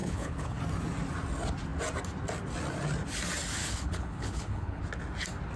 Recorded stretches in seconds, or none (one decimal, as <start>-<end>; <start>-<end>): 0.6-3.6; 4.8-5.6